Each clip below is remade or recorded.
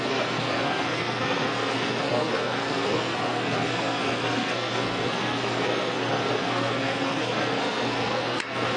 remade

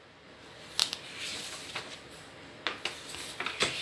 recorded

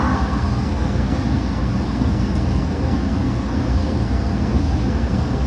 remade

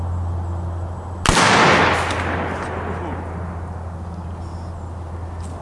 recorded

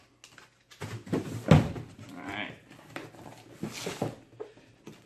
recorded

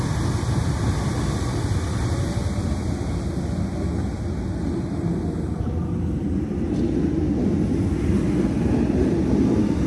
recorded